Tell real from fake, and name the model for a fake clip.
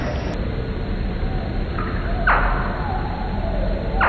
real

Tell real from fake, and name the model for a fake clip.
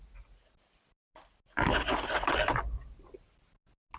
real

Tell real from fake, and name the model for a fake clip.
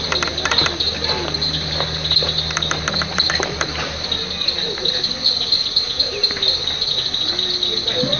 real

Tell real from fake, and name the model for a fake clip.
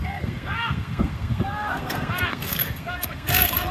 fake, codec, SNAC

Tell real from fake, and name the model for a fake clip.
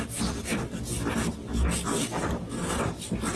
real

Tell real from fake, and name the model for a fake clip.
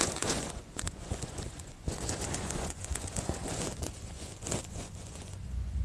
fake, vocoder, Vocos